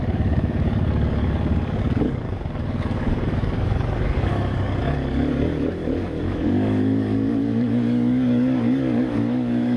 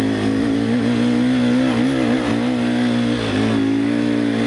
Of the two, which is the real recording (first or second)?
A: second